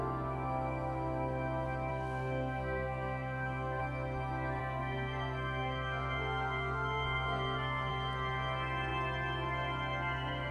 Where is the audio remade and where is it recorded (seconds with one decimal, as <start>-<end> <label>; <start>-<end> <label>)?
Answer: 0.0-1.9 recorded; 1.9-3.8 remade; 3.8-4.6 recorded; 4.6-7.9 remade; 7.9-10.5 recorded